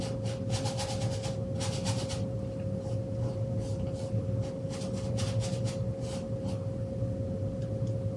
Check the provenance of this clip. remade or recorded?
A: recorded